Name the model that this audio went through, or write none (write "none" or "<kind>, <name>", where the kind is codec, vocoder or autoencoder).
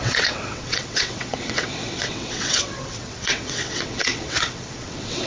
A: vocoder, WaveNeXt